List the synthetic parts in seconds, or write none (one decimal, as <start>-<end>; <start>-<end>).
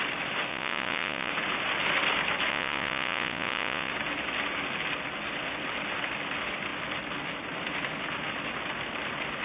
0.5-1.3; 2.5-3.9